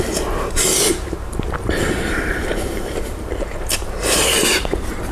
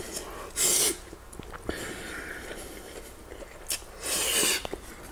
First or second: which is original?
second